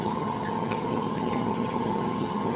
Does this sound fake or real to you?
fake